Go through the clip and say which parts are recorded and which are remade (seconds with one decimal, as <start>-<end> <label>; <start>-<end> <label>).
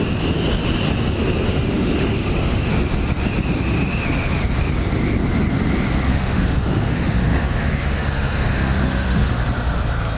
0.0-1.5 recorded; 1.5-2.7 remade; 2.7-6.1 recorded; 6.1-9.4 remade; 9.4-10.2 recorded